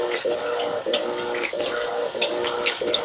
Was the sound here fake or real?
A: fake